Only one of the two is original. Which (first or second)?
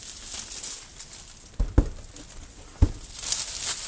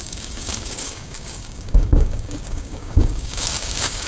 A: first